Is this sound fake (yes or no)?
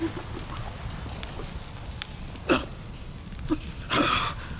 no